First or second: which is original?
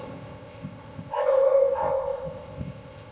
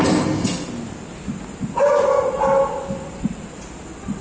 second